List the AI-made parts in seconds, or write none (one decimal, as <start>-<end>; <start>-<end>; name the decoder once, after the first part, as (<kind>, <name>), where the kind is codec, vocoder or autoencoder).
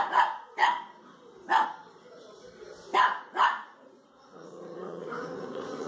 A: 0.0-0.6 (vocoder, Vocos); 3.2-5.9